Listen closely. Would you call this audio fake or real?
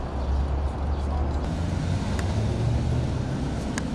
real